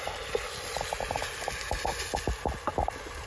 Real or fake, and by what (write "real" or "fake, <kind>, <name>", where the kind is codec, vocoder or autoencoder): real